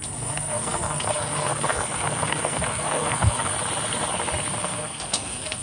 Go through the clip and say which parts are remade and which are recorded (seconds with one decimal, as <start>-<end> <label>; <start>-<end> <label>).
0.0-3.5 remade; 3.5-4.6 recorded; 4.6-5.6 remade